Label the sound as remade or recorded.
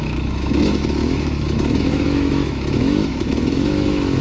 remade